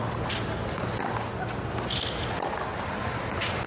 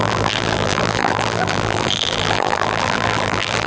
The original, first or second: first